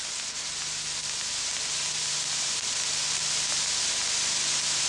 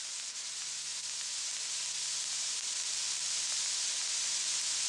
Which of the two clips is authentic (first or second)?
second